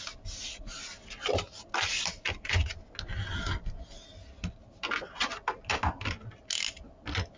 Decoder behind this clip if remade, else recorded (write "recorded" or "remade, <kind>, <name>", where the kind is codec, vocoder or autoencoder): recorded